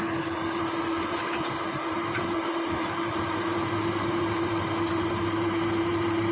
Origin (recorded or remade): remade